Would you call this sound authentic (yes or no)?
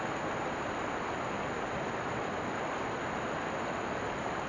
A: yes